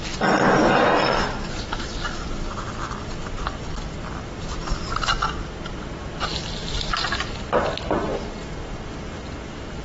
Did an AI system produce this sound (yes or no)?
no